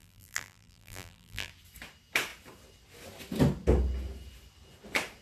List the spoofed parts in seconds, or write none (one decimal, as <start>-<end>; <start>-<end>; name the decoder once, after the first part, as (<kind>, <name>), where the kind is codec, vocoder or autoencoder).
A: 0.0-1.5 (vocoder, BigVGAN v2)